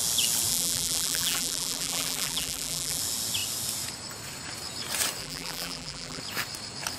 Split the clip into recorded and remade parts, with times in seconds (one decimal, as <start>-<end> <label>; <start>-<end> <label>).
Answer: 0.0-0.5 recorded; 0.5-3.0 remade; 3.0-5.2 recorded; 5.2-6.2 remade; 6.2-7.0 recorded